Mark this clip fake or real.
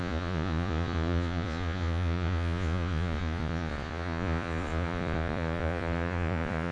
fake